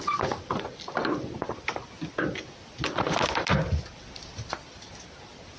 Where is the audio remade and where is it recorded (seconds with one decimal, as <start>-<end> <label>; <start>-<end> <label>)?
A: 0.0-5.6 recorded